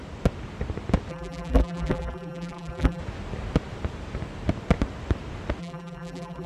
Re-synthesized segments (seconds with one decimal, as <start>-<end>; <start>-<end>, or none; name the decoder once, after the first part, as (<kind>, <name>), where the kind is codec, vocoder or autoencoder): 1.1-3.0 (vocoder, BigVGAN v2); 5.6-6.5